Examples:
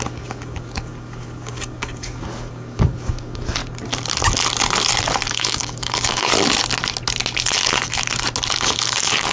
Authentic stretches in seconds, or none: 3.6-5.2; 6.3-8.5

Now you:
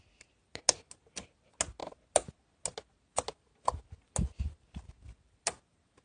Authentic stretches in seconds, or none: 0.0-6.0

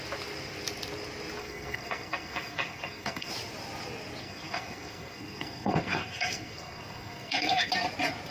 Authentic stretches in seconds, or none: 0.0-1.4; 3.3-4.2; 7.7-8.3

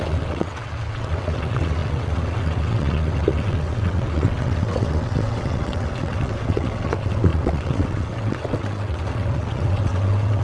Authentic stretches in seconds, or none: none

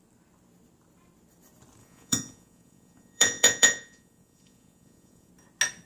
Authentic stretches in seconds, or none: 0.0-1.8; 5.3-5.9

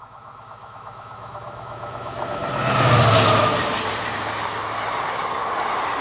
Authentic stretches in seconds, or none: 2.4-6.0

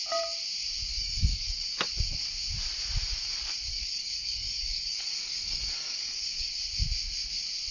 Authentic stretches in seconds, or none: 0.0-0.9; 1.9-3.7; 6.5-7.7